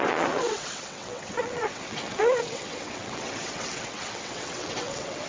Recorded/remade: remade